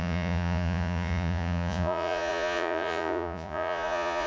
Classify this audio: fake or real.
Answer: fake